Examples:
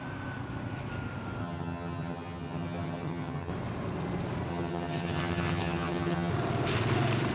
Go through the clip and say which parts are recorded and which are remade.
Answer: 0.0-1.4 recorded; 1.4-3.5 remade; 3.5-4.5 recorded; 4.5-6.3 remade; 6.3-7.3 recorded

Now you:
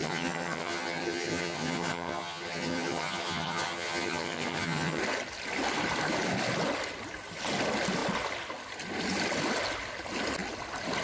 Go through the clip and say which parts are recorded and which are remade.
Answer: 0.0-5.0 remade; 5.0-11.0 recorded

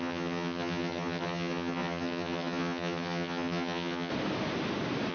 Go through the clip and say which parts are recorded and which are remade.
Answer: 0.0-4.1 remade; 4.1-5.1 recorded

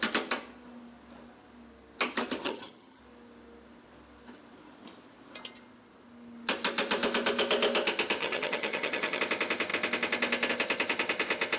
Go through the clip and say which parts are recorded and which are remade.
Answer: 0.0-2.4 recorded; 2.4-3.0 remade; 3.0-8.2 recorded; 8.2-9.2 remade; 9.2-11.6 recorded

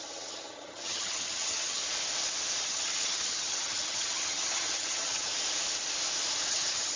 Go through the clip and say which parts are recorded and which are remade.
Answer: 0.0-1.8 remade; 1.8-2.6 recorded; 2.6-5.3 remade; 5.3-6.5 recorded; 6.5-7.0 remade

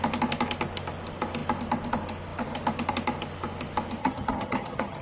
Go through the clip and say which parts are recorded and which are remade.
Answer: 0.0-4.0 recorded; 4.0-5.0 remade

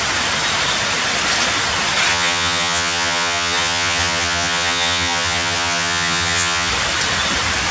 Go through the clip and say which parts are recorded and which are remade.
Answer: 0.0-2.1 recorded; 2.1-6.7 remade; 6.7-7.7 recorded

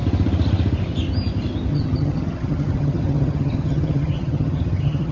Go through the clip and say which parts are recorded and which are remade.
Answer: 0.0-1.7 recorded; 1.7-5.1 remade